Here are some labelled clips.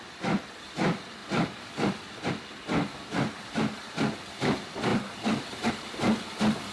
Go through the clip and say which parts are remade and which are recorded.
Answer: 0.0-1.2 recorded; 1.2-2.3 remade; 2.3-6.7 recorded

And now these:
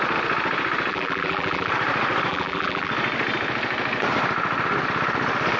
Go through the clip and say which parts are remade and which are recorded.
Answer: 0.0-0.9 recorded; 0.9-1.7 remade; 1.7-2.3 recorded; 2.3-2.9 remade; 2.9-5.6 recorded

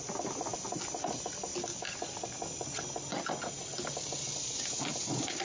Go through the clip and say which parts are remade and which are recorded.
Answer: 0.0-1.5 recorded; 1.5-4.7 remade; 4.7-5.4 recorded

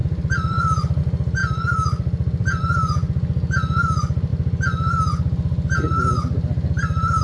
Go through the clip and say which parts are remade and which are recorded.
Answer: 0.0-1.0 remade; 1.0-1.4 recorded; 1.4-2.6 remade; 2.6-7.2 recorded

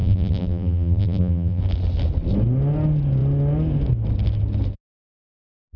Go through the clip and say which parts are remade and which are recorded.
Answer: 0.0-1.6 remade; 1.6-5.8 recorded

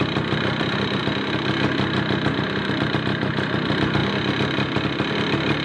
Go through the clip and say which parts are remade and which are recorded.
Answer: 0.0-1.0 remade; 1.0-3.3 recorded; 3.3-4.0 remade; 4.0-5.1 recorded; 5.1-5.6 remade